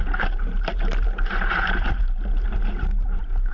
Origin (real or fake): fake